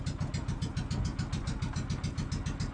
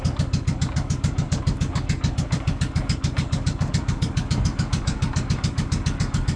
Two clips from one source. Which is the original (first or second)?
first